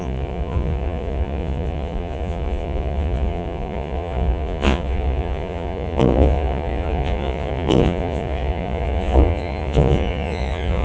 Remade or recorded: remade